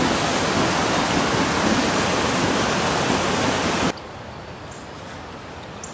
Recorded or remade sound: recorded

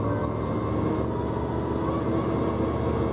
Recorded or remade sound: recorded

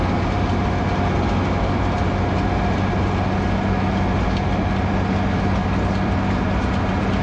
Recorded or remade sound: recorded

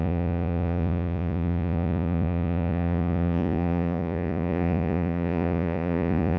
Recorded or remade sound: remade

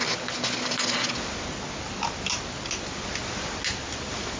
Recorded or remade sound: recorded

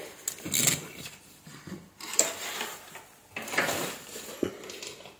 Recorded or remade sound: recorded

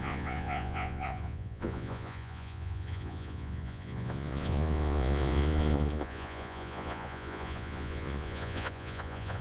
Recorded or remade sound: remade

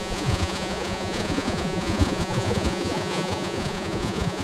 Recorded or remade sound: remade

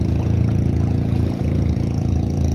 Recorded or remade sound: remade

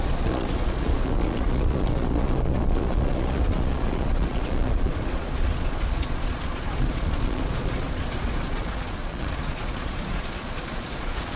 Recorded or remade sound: remade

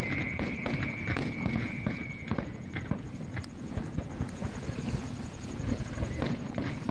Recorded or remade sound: remade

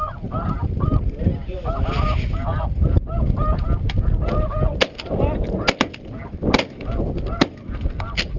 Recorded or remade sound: recorded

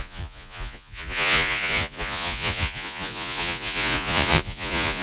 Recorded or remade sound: remade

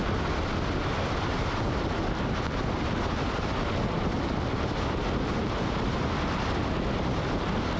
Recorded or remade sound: recorded